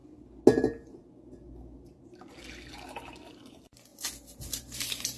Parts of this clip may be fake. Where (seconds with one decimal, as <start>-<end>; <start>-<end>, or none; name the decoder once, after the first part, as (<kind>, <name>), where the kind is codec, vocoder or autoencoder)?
3.1-3.9 (vocoder, BigVGAN v2); 4.5-5.2

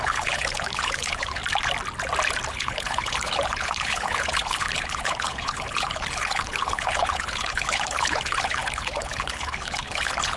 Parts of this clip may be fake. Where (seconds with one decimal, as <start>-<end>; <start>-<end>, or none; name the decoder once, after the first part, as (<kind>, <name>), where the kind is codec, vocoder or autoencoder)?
0.0-1.4 (codec, HILCodec); 2.5-10.4

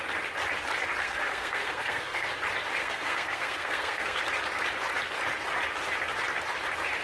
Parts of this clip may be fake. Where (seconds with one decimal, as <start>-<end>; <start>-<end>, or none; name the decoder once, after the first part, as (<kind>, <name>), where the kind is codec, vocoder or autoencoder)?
1.0-2.3 (codec, SNAC); 2.8-4.2

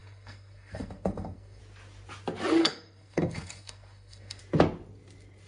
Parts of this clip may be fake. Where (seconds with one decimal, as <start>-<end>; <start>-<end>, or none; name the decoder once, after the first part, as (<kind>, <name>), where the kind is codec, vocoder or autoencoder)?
0.0-1.6 (codec, SNAC); 2.6-4.4

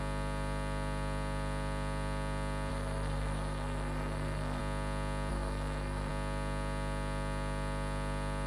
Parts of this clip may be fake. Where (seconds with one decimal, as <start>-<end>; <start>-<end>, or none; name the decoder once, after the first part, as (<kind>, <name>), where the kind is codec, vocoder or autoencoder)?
2.7-4.6 (codec, SNAC); 5.3-6.1

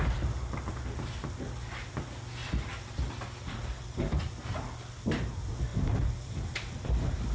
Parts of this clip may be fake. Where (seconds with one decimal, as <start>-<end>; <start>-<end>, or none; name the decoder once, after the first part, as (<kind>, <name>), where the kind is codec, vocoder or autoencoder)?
2.4-4.2 (vocoder, BigVGAN v2); 5.7-7.3

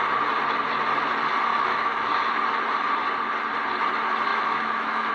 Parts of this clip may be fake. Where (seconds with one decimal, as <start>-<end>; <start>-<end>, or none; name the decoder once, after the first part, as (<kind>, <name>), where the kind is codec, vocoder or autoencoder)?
1.5-2.3 (autoencoder, DAC-VAE); 4.3-5.1